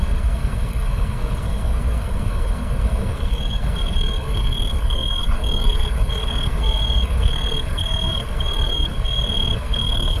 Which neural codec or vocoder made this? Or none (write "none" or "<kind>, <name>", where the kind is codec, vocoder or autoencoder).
codec, SNAC